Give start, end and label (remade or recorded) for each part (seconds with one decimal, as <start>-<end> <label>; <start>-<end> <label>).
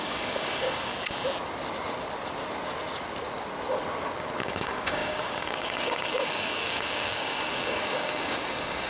0.0-0.9 remade; 0.9-4.4 recorded; 4.4-8.9 remade